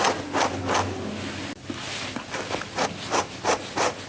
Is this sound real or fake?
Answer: real